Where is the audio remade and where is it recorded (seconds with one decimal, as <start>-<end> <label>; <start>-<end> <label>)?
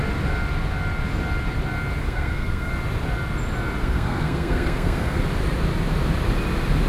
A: 0.0-2.0 recorded; 2.0-2.7 remade; 2.7-3.8 recorded; 3.8-5.2 remade; 5.2-6.9 recorded